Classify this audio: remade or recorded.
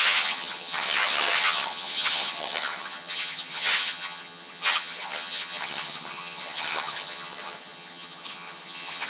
remade